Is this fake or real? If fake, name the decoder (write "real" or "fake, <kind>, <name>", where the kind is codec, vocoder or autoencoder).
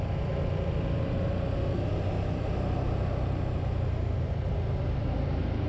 real